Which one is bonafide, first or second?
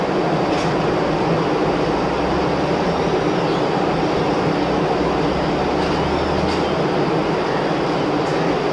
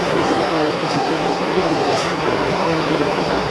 first